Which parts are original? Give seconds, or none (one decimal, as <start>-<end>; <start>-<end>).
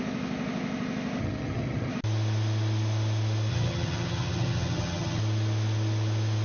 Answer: 0.0-1.2; 1.9-3.5; 5.2-6.4